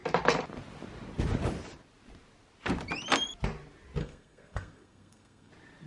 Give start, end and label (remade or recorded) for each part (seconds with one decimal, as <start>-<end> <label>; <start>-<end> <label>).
0.0-4.0 recorded; 4.0-5.5 remade; 5.5-5.9 recorded